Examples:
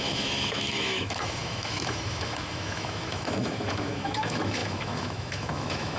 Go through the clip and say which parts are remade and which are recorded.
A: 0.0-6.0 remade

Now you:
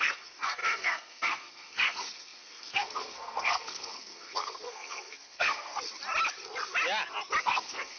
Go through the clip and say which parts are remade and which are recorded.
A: 0.0-5.7 remade; 5.7-7.4 recorded; 7.4-8.0 remade

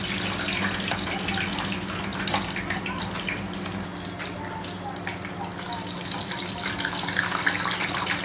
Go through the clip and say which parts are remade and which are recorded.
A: 0.0-8.2 recorded

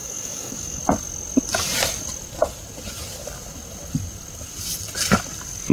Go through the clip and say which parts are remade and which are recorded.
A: 0.0-0.8 remade; 0.8-5.7 recorded

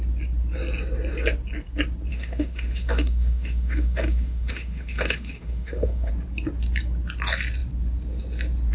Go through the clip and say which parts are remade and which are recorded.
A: 0.0-2.1 recorded; 2.1-6.1 remade; 6.1-8.7 recorded

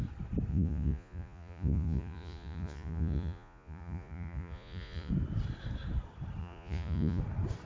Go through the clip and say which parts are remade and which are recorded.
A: 0.0-0.5 recorded; 0.5-5.1 remade; 5.1-6.4 recorded; 6.4-7.2 remade; 7.2-7.7 recorded

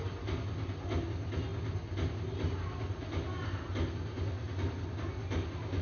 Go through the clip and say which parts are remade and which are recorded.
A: 0.0-5.8 recorded